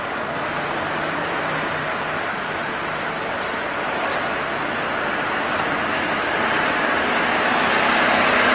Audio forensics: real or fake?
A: real